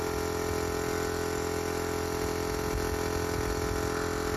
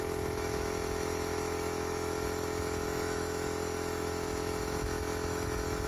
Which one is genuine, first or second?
first